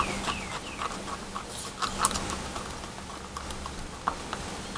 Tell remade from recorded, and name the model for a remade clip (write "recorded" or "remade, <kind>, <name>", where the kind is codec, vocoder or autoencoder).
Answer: recorded